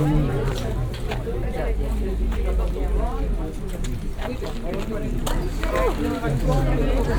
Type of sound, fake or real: fake